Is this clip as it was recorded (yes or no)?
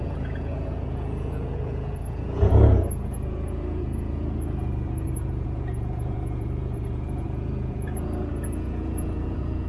no